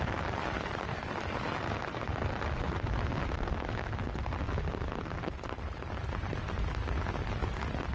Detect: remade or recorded recorded